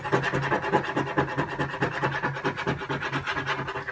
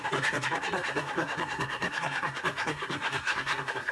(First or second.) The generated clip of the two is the second